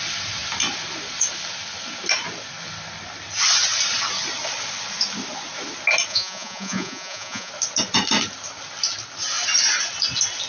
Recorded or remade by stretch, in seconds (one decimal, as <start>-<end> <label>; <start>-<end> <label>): 0.0-6.1 recorded; 6.1-7.5 remade; 7.5-10.5 recorded